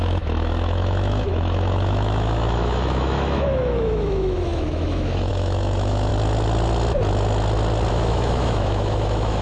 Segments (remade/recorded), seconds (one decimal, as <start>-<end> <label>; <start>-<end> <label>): 0.0-6.1 remade; 6.1-7.9 recorded; 7.9-9.4 remade